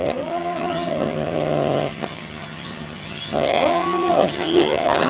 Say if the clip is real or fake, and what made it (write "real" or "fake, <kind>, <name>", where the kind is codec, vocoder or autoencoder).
fake, vocoder, HiFi-GAN